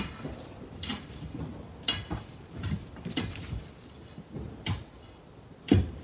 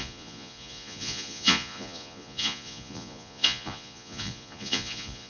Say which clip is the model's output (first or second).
second